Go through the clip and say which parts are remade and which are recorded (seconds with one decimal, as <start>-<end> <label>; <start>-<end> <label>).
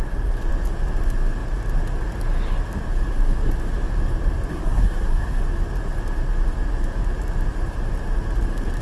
0.0-4.5 recorded; 4.5-5.4 remade; 5.4-8.8 recorded